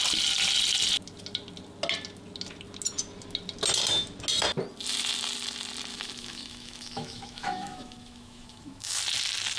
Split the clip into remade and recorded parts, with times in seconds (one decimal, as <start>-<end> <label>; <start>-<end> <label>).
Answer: 0.0-5.9 recorded; 5.9-9.0 remade; 9.0-9.6 recorded